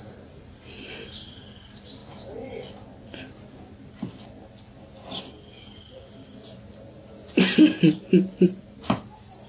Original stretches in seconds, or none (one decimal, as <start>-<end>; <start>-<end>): 0.0-9.5